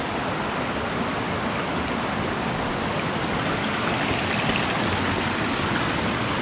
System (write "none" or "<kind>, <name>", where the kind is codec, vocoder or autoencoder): none